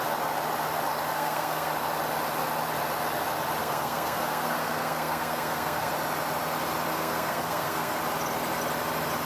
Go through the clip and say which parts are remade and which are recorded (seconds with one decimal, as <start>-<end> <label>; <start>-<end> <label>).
0.0-1.1 recorded; 1.1-1.7 remade; 1.7-3.6 recorded; 3.6-5.9 remade; 5.9-6.9 recorded; 6.9-8.0 remade; 8.0-9.3 recorded